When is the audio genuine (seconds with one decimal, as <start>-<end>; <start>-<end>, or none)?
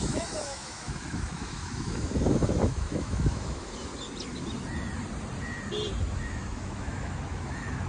3.9-6.0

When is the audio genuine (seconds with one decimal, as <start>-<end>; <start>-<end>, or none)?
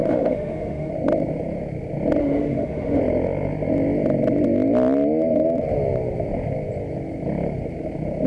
0.9-2.2; 3.0-8.3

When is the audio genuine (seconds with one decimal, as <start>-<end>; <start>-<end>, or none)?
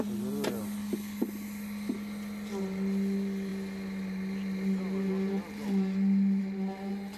0.0-7.2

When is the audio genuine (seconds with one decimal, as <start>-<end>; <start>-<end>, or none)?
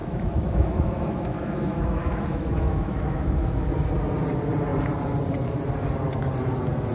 3.7-6.9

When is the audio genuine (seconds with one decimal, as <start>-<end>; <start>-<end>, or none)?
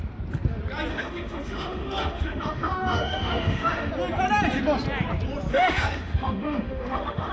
0.0-0.9; 3.9-5.5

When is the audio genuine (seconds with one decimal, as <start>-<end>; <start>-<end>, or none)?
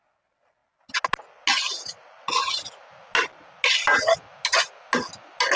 0.0-5.6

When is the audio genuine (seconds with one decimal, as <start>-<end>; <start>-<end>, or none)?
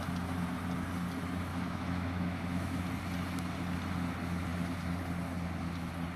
0.0-1.5; 2.8-6.2